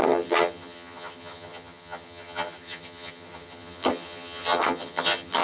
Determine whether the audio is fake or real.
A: fake